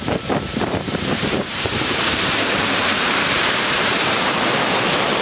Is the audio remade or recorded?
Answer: remade